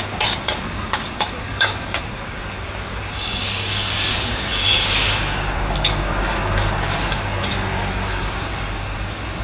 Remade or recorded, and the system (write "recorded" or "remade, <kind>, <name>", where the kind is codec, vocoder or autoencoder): remade, codec, DAC